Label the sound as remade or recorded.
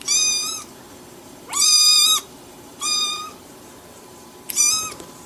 remade